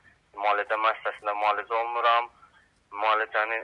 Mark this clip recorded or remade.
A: recorded